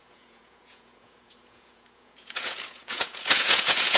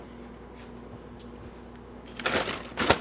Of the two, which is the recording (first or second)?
second